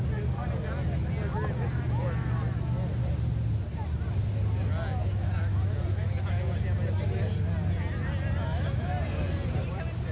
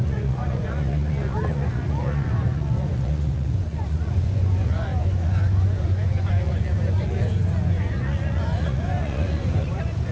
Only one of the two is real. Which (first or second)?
first